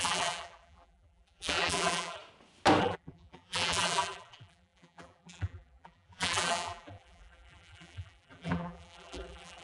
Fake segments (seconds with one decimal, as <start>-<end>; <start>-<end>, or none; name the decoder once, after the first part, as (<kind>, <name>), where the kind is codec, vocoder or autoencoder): 0.0-2.2 (vocoder, BigVGAN v2); 2.8-9.6